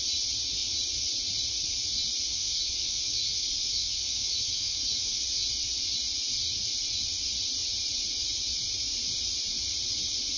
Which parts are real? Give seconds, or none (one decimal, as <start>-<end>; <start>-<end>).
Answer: 0.0-2.3; 5.2-10.4